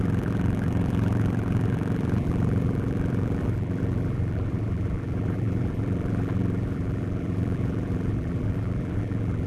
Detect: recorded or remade remade